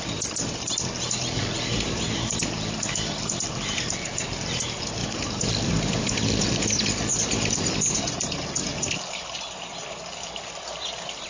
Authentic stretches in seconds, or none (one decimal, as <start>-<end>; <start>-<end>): 0.0-11.3